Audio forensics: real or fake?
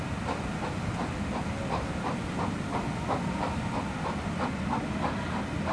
real